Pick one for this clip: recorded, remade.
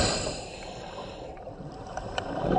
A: remade